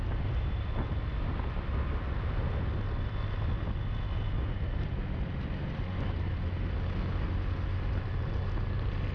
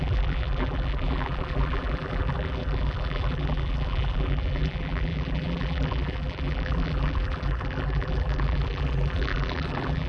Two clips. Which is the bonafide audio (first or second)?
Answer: first